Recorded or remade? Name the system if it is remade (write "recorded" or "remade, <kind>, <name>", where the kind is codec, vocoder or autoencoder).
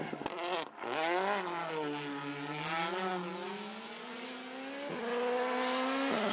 recorded